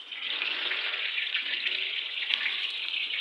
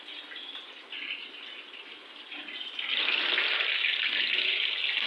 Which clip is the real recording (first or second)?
second